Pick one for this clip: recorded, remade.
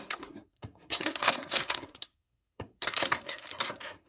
remade